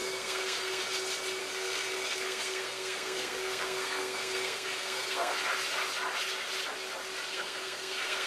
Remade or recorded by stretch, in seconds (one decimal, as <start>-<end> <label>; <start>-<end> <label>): 0.0-0.8 remade; 0.8-1.4 recorded; 1.4-5.4 remade; 5.4-7.3 recorded; 7.3-8.3 remade